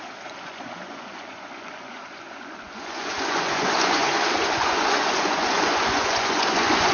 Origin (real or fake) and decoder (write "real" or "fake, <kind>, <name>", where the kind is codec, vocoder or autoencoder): fake, vocoder, Vocos